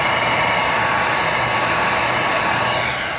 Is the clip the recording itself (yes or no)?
yes